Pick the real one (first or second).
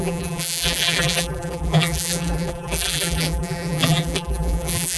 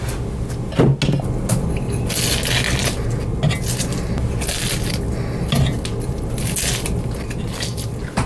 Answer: second